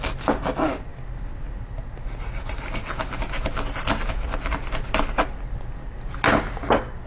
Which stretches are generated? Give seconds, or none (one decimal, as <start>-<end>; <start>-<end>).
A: none